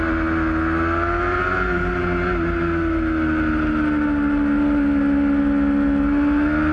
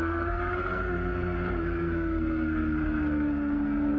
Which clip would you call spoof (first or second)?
second